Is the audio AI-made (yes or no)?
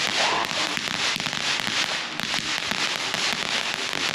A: no